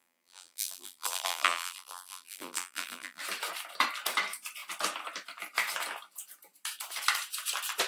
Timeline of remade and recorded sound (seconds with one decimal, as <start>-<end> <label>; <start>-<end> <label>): 0.0-3.2 remade; 3.2-7.9 recorded